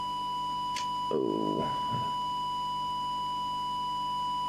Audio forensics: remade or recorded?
recorded